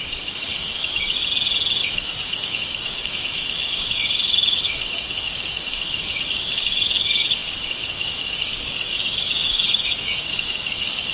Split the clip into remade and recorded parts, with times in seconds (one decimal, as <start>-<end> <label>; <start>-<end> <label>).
0.0-1.2 remade; 1.2-1.8 recorded; 1.8-11.1 remade